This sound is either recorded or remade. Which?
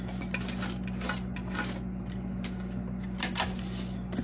recorded